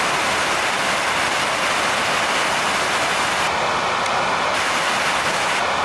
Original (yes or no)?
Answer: yes